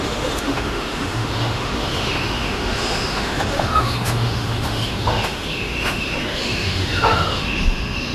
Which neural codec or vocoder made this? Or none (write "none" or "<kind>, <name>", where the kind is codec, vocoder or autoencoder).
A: autoencoder, DAC-VAE